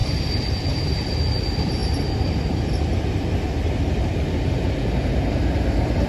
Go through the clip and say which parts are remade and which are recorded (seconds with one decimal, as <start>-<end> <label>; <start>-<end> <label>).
0.0-0.9 remade; 0.9-6.1 recorded